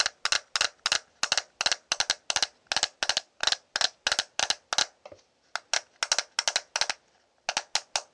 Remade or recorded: recorded